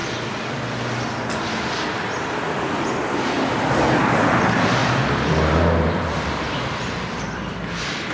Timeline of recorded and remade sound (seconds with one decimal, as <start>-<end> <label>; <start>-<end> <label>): 0.0-4.8 recorded; 4.8-7.6 remade; 7.6-8.1 recorded